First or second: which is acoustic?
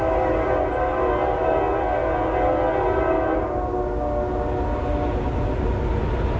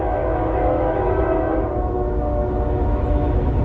first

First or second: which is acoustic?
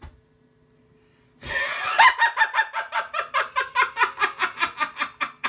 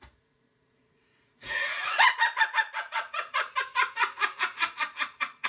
first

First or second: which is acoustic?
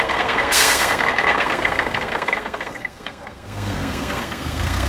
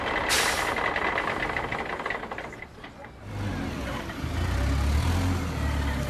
second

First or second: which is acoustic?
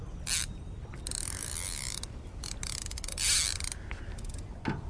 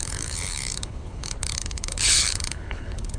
first